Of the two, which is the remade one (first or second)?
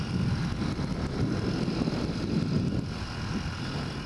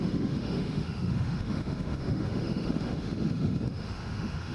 second